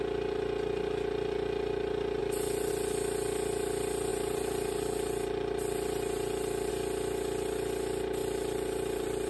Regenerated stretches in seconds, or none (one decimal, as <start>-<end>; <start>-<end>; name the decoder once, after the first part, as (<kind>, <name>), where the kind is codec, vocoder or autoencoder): 2.2-2.7 (vocoder, BigVGAN v2); 4.1-6.7; 8.2-9.3